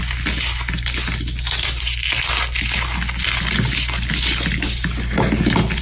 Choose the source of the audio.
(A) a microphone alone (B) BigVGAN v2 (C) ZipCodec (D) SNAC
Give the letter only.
A